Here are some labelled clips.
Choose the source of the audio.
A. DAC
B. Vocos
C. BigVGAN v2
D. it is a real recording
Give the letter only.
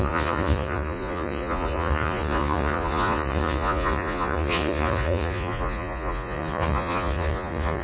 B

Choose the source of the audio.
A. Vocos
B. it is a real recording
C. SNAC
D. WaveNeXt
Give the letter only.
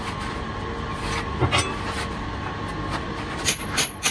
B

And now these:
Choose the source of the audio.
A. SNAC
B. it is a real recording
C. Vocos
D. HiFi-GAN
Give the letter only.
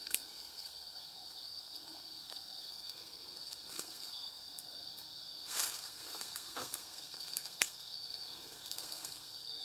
A